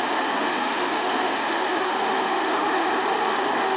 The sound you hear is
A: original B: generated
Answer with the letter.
B